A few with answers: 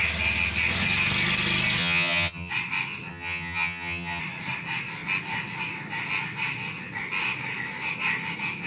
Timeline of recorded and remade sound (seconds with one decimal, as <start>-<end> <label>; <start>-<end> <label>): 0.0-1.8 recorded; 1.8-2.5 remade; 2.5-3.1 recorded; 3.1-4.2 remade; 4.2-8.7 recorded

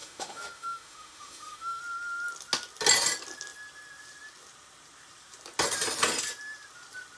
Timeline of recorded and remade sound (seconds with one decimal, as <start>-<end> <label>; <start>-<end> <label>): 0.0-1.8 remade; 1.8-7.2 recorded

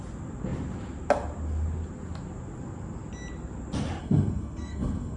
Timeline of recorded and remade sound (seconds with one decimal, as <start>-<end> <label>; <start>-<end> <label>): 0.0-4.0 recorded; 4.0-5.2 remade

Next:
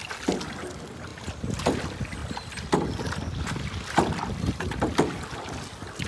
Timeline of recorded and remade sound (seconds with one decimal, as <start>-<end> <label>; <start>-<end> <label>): 0.0-6.1 recorded